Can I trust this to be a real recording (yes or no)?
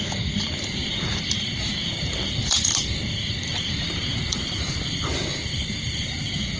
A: no